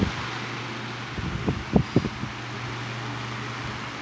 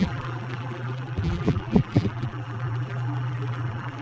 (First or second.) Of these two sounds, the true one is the first